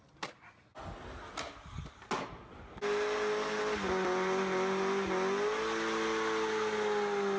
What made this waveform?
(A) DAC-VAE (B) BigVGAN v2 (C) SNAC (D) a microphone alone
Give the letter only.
D